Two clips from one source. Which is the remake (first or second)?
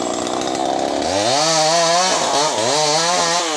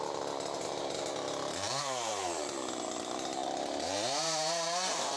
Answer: second